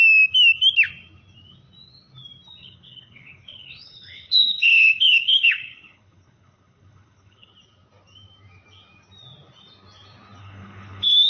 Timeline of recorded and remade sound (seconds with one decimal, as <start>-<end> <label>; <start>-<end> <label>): 0.0-2.6 recorded; 2.6-7.5 remade; 7.5-10.4 recorded; 10.4-11.3 remade